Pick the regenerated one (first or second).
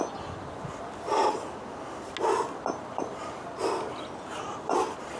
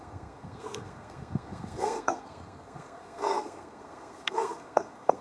second